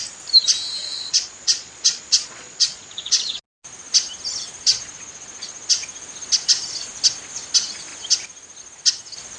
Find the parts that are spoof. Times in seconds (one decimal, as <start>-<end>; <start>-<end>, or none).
0.8-3.4; 4.7-5.7